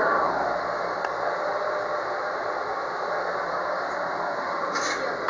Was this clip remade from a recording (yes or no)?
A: no